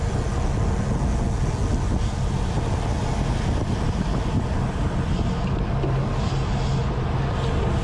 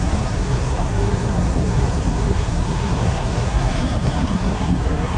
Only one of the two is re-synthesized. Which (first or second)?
second